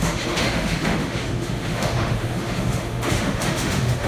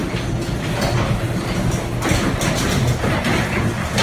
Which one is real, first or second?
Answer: second